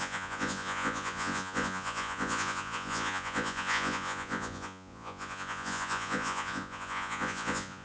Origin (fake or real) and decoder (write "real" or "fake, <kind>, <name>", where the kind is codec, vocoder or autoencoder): fake, vocoder, Vocos